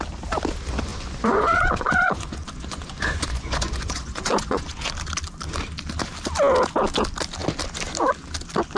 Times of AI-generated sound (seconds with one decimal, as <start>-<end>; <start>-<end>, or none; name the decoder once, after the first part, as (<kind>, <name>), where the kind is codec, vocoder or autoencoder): 0.9-4.9 (vocoder, Vocos)